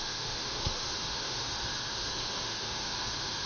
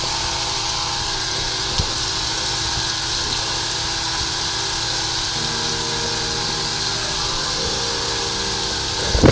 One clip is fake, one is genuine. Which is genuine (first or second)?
second